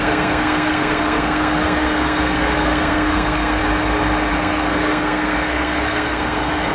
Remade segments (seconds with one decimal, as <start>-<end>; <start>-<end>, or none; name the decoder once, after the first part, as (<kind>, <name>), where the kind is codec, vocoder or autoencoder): 0.0-3.6 (codec, SNAC); 4.3-6.7